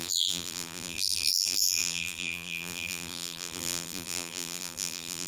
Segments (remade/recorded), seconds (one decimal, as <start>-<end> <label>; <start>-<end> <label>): 0.0-5.3 remade